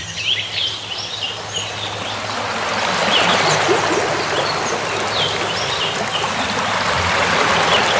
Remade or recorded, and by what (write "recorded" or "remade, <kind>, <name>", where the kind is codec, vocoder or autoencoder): recorded